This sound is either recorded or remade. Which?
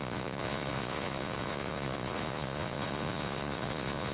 remade